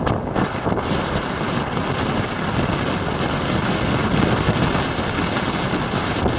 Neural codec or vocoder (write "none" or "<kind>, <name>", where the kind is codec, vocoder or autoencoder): none